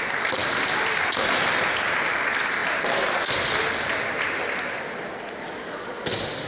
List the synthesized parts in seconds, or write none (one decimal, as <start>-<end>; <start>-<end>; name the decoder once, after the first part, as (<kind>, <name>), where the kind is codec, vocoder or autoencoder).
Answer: none